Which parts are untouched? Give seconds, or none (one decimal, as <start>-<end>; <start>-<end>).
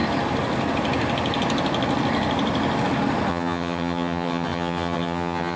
0.0-3.3